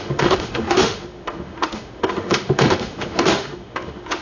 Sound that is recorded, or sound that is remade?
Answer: remade